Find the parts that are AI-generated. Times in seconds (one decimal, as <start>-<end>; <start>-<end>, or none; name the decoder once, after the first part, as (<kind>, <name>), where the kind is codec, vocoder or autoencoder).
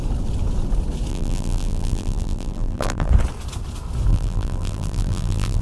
1.1-3.1 (vocoder, BigVGAN v2); 4.1-5.6